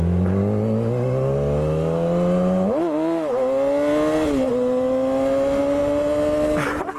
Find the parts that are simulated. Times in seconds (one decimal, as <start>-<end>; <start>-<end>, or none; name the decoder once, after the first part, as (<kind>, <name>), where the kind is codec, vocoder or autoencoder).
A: none